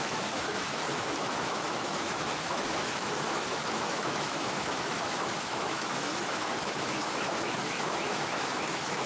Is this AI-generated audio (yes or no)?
yes